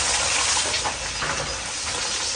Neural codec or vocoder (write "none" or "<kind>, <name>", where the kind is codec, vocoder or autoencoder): none